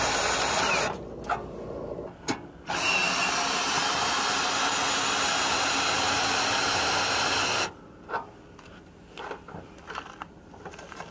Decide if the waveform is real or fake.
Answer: real